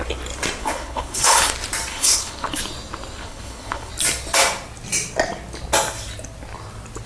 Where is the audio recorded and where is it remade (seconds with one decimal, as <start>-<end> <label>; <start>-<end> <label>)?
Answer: 0.0-0.6 recorded; 0.6-1.5 remade; 1.5-1.9 recorded; 1.9-2.6 remade; 2.6-3.2 recorded; 3.2-3.9 remade; 3.9-7.1 recorded